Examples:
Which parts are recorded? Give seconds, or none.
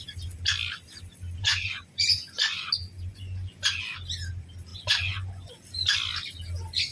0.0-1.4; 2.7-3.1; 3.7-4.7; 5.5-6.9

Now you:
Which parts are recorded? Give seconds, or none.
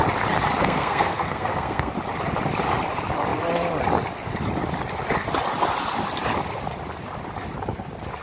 0.0-0.6; 1.9-8.2